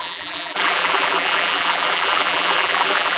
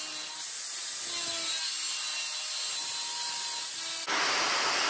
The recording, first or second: second